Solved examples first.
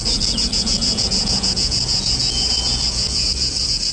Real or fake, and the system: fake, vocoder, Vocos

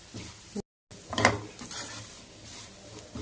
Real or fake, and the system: real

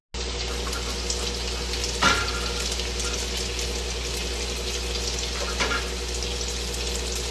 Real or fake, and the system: real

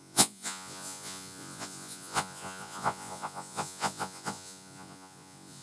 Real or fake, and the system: fake, vocoder, Vocos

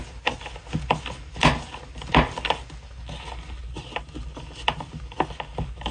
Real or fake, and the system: real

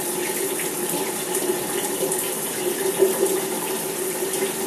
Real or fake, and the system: real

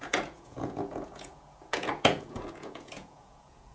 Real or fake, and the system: fake, vocoder, Vocos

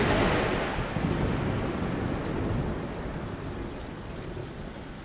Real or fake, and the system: real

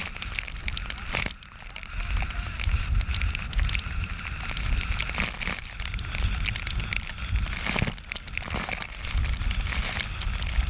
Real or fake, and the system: real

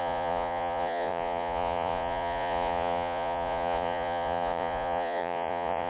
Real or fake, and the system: fake, vocoder, Vocos